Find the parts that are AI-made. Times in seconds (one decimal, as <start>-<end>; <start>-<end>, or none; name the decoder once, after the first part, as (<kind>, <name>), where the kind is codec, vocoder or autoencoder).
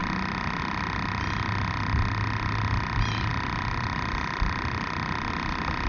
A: 3.3-5.3 (vocoder, BigVGAN v2)